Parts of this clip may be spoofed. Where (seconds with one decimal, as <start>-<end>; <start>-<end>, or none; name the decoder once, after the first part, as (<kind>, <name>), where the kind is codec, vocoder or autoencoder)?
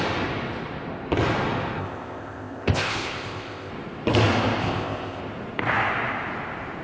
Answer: 1.8-3.7 (codec, ZipCodec); 4.6-5.2